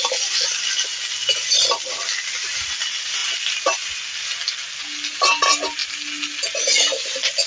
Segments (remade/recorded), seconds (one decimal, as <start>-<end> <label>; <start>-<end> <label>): 0.0-7.5 recorded